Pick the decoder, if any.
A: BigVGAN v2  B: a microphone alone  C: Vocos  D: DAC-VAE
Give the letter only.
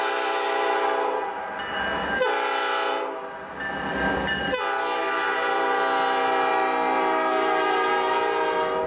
B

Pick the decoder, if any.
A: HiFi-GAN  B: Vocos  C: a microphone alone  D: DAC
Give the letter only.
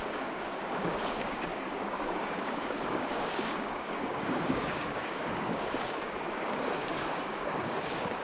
D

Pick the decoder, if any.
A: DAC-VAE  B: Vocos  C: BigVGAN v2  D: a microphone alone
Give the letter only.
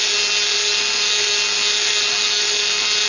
D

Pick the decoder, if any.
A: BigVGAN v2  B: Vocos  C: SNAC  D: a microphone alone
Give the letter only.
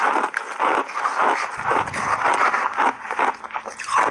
D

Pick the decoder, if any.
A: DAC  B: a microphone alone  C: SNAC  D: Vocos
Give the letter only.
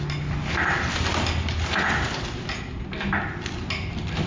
B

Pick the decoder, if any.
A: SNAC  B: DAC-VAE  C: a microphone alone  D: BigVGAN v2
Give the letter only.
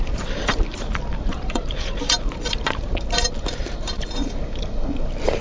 D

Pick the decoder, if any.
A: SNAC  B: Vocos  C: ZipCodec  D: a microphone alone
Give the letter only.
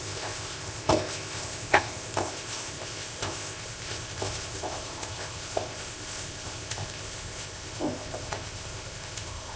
C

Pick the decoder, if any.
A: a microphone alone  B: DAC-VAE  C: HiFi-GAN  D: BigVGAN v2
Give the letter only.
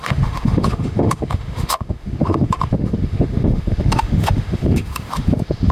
B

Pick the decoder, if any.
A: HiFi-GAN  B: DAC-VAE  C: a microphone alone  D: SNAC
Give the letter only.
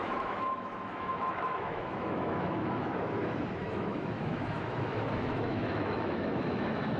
B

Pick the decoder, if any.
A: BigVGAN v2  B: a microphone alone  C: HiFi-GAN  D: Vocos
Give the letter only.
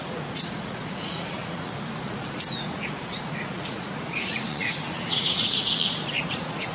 D